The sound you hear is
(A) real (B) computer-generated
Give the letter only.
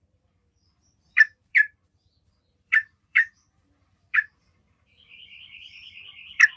B